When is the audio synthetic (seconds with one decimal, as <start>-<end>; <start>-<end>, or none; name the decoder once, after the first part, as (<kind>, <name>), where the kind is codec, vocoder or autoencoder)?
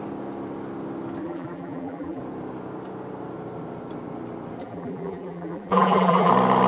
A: 1.2-2.2 (vocoder, BigVGAN v2); 4.6-6.3